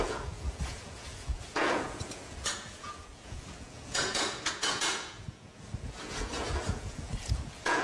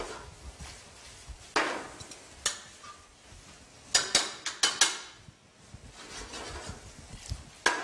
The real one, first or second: second